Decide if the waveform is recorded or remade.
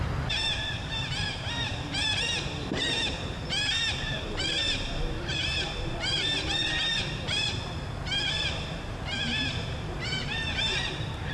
remade